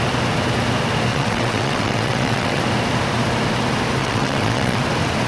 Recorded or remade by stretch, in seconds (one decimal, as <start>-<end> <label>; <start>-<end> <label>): 0.0-1.1 recorded; 1.1-2.6 remade; 2.6-4.0 recorded; 4.0-4.8 remade; 4.8-5.3 recorded